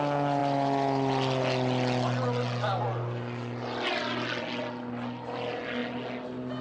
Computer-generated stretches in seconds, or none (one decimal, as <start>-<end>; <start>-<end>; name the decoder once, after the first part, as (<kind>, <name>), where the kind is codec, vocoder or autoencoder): none